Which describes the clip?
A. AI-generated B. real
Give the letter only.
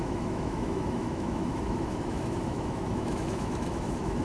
A